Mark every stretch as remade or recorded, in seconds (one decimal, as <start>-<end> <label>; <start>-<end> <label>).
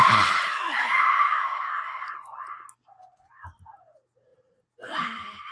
0.0-0.5 recorded; 0.5-1.7 remade; 1.7-5.5 recorded